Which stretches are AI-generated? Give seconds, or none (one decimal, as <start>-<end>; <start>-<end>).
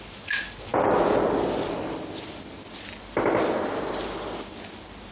none